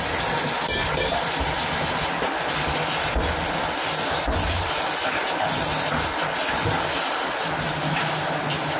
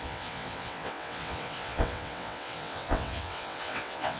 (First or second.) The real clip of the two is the first